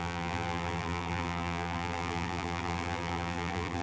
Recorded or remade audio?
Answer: remade